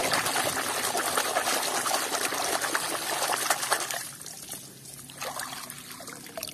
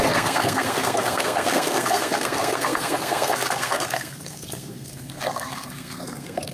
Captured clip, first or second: first